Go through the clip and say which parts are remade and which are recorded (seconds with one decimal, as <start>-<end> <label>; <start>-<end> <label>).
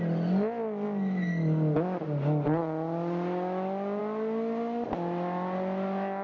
0.0-6.2 recorded